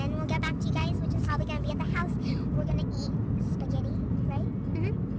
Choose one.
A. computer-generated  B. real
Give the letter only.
B